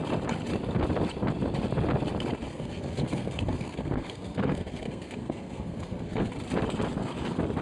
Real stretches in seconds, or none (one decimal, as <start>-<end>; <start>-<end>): 0.0-2.5; 6.3-7.6